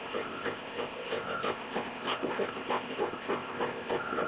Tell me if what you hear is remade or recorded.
remade